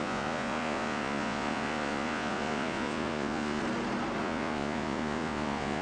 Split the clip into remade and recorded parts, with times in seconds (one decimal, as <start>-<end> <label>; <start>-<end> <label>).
0.0-3.6 remade; 3.6-4.2 recorded; 4.2-5.8 remade